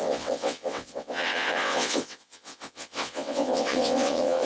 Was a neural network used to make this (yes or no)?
yes